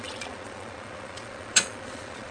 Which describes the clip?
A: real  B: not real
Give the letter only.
B